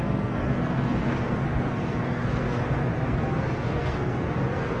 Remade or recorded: remade